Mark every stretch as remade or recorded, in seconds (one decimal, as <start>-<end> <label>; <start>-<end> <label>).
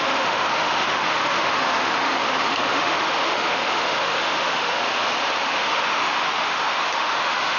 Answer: 0.0-4.8 remade; 4.8-5.4 recorded; 5.4-7.6 remade